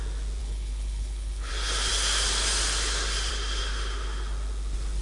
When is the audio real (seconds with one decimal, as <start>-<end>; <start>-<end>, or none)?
0.0-0.4; 1.5-5.0